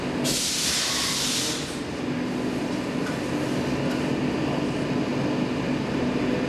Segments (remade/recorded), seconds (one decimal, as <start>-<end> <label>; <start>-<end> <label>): 0.0-6.5 recorded